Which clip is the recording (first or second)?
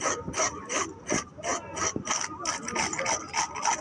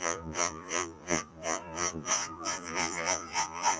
first